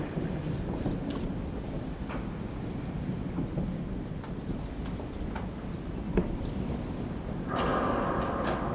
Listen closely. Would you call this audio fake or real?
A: real